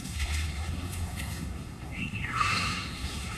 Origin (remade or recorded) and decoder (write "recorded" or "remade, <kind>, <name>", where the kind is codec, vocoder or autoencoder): remade, codec, SNAC